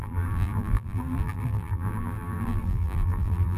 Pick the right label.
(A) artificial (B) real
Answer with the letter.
A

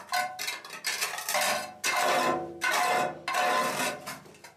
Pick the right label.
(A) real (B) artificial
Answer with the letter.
A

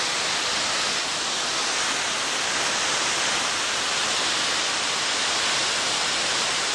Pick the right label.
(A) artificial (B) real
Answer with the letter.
B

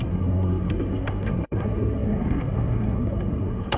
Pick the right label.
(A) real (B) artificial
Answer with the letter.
B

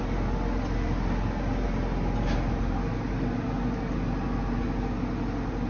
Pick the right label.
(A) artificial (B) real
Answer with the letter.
B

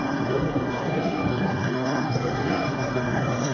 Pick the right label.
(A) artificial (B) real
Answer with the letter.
A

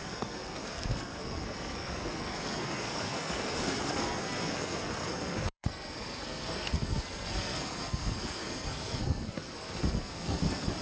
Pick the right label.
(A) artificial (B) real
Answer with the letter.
A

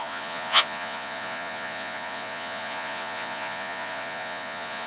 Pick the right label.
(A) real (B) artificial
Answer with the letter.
B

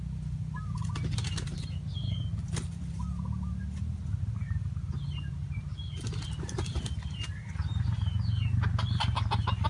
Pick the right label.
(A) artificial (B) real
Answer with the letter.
B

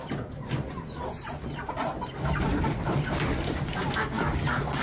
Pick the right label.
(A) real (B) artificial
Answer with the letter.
A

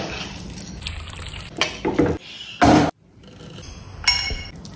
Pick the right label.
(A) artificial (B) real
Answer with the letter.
B